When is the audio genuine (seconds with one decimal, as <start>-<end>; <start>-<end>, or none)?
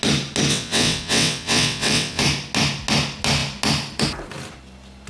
0.0-0.5; 2.2-5.1